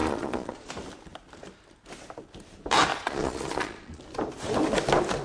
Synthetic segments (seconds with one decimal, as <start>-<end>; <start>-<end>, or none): 0.0-0.7; 2.9-4.0